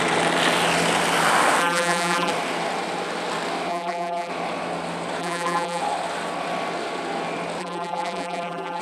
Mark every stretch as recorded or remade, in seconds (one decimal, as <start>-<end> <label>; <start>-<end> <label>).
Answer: 0.0-1.6 recorded; 1.6-2.3 remade; 2.3-3.7 recorded; 3.7-4.3 remade; 4.3-5.2 recorded; 5.2-5.8 remade; 5.8-7.6 recorded; 7.6-8.8 remade

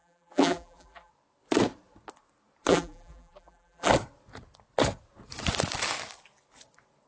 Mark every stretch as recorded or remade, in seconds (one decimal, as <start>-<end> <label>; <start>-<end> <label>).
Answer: 0.0-1.1 remade; 1.1-2.7 recorded; 2.7-3.9 remade; 3.9-7.1 recorded

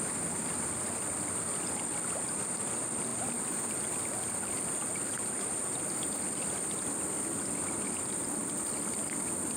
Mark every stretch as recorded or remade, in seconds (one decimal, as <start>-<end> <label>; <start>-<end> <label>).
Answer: 0.0-9.6 recorded